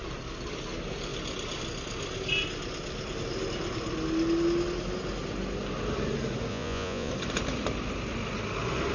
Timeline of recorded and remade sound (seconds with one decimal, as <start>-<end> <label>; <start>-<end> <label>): 0.0-6.5 recorded; 6.5-7.1 remade; 7.1-8.9 recorded